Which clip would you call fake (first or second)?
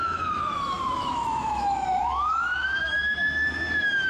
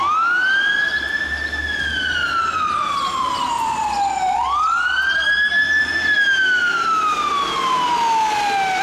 first